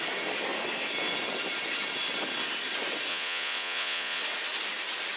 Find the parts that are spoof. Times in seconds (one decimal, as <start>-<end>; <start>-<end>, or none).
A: 3.1-4.2

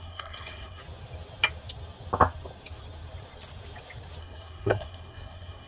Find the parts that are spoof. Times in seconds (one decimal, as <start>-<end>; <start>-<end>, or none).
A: 0.0-0.8; 4.2-5.7

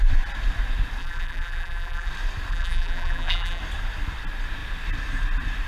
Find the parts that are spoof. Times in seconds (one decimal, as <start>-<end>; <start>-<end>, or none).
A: 1.0-2.1; 2.5-3.6

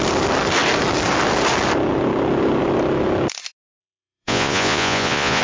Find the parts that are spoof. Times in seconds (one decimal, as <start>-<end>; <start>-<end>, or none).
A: 3.8-5.4

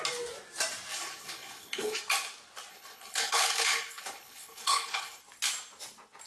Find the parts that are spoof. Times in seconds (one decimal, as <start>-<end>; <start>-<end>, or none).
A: 0.9-2.0; 2.7-5.2

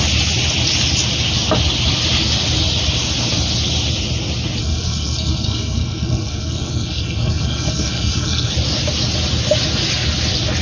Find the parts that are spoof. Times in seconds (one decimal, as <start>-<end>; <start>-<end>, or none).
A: 4.6-8.5

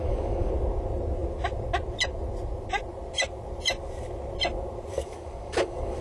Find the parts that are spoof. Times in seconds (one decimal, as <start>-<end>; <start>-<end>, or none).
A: 0.0-0.5; 4.9-6.0

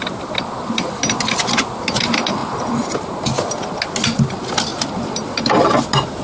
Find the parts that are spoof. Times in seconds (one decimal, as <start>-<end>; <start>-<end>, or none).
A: 2.4-3.8; 4.7-5.7